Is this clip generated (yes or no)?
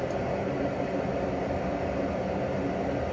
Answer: yes